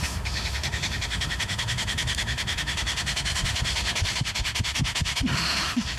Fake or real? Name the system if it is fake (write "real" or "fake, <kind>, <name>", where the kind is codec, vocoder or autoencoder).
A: fake, autoencoder, DAC-VAE